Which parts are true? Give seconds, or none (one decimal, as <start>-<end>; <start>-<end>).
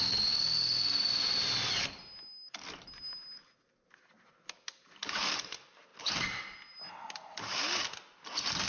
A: 0.0-8.7